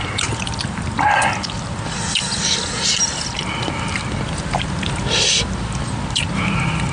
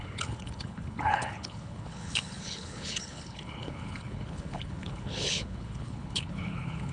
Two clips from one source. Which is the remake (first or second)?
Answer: second